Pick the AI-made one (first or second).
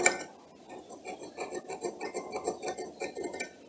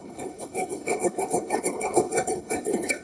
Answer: second